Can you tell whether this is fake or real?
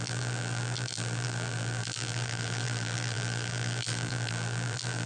fake